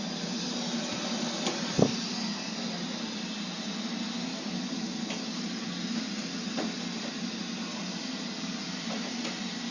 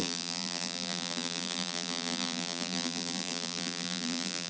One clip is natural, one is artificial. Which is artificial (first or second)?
second